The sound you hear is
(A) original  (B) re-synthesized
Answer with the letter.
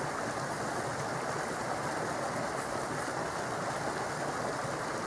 A